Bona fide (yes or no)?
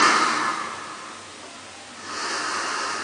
yes